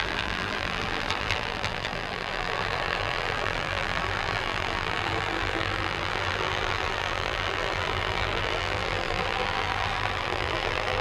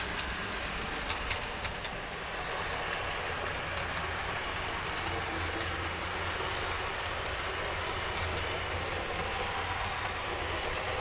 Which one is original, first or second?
second